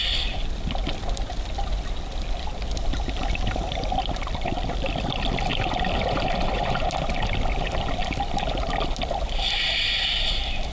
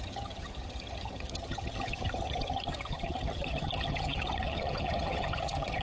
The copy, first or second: second